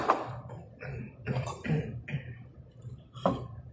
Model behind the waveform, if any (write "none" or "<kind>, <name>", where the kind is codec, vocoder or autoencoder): vocoder, BigVGAN v2